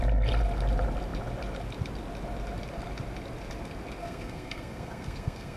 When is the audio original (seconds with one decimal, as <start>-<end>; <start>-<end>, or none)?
0.0-4.0

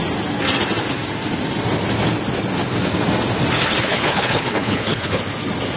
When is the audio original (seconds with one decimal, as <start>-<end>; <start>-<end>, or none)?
0.0-3.9; 5.2-5.8

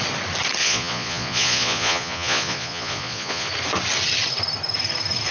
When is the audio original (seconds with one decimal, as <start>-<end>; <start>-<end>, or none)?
0.0-0.6; 3.5-5.3

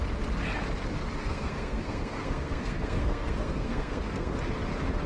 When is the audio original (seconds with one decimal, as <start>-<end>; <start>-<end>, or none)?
0.0-1.2; 4.3-5.1

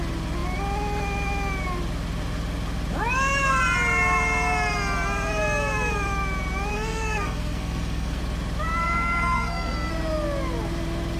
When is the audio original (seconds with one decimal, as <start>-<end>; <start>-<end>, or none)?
0.0-6.7; 8.2-8.8; 9.9-11.2